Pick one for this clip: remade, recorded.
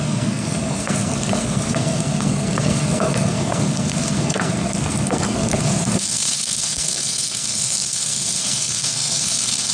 remade